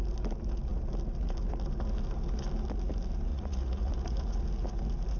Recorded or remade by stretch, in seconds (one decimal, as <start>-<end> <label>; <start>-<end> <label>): 0.0-3.3 recorded; 3.3-3.9 remade; 3.9-5.2 recorded